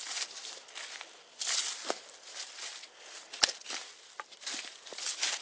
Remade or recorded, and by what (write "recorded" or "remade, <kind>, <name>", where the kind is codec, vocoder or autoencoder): recorded